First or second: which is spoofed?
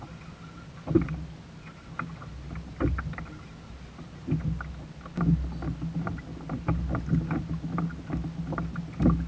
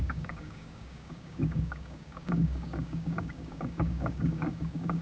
second